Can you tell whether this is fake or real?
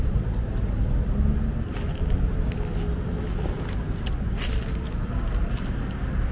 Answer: real